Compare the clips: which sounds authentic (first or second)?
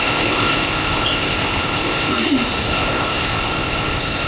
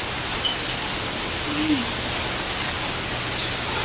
second